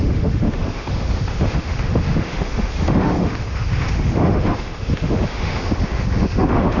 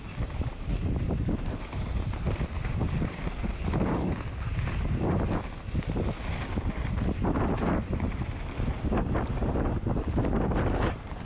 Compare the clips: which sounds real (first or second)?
second